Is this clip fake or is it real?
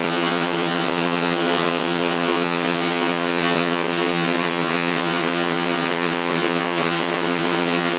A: fake